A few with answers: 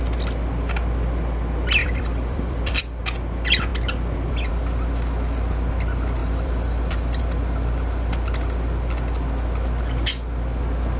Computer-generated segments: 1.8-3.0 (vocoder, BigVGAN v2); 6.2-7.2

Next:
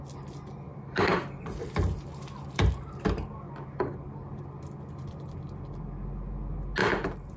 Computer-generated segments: 0.7-3.7 (vocoder, BigVGAN v2); 6.8-7.4

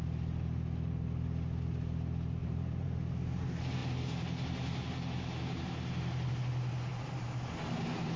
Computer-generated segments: 2.4-3.0 (vocoder, BigVGAN v2); 6.9-7.4

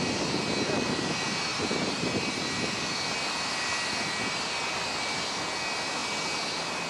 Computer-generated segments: 1.5-2.3 (vocoder, BigVGAN v2)